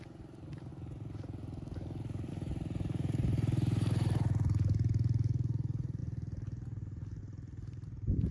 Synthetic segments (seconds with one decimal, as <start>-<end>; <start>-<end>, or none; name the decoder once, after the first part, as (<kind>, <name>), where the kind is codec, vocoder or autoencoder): 0.0-0.7 (vocoder, BigVGAN v2); 2.3-6.0; 7.2-8.3